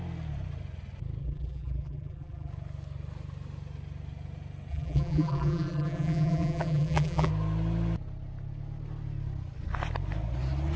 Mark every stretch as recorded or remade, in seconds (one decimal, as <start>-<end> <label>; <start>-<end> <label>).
0.0-1.2 recorded; 1.2-2.5 remade; 2.5-4.7 recorded; 4.7-7.3 remade; 7.3-10.8 recorded